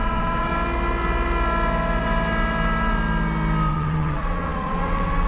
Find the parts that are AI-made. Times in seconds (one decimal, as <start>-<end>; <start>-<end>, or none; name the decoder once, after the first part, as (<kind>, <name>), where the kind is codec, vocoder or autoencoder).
0.0-0.5 (vocoder, WaveNeXt); 3.7-5.3